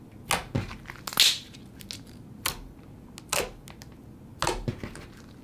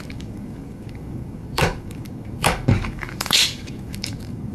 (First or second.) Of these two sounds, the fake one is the second